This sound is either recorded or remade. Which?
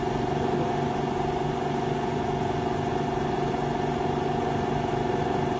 recorded